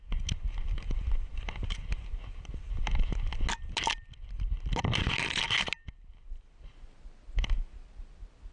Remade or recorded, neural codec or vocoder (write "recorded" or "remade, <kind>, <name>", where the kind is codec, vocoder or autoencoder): recorded